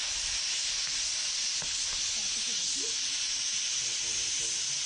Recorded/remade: recorded